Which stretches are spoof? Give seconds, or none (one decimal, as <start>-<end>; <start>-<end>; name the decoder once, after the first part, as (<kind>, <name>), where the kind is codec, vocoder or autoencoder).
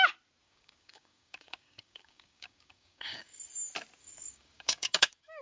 0.4-3.5 (codec, DAC); 4.0-5.4